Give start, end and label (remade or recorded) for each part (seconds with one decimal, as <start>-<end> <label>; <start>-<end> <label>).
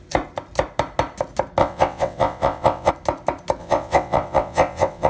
0.0-1.6 recorded; 1.6-2.9 remade; 2.9-3.6 recorded; 3.6-5.1 remade